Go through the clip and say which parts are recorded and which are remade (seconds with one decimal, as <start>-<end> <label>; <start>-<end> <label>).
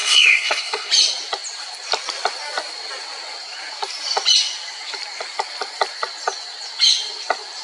0.0-0.9 remade; 0.9-7.6 recorded